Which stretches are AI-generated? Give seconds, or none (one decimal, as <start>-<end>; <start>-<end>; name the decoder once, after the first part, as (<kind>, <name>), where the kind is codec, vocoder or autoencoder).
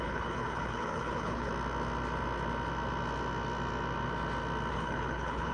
0.0-1.5 (codec, HILCodec); 4.7-5.5